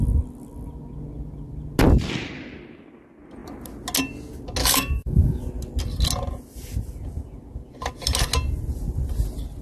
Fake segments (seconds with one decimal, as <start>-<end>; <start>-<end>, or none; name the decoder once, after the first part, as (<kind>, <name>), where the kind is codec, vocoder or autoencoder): 4.6-5.4 (codec, DAC)